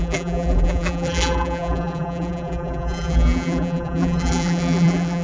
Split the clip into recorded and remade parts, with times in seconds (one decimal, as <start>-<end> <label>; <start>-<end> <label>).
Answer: 0.0-5.2 remade